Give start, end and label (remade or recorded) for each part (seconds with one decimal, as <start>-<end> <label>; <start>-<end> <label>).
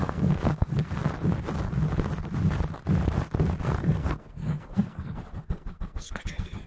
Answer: 0.0-1.0 remade; 1.0-3.6 recorded; 3.6-6.7 remade